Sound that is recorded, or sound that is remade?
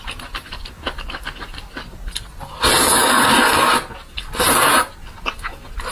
recorded